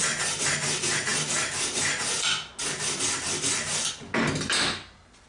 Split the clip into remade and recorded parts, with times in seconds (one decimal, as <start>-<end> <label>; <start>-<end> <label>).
0.0-5.3 recorded